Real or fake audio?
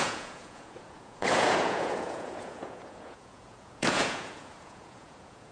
fake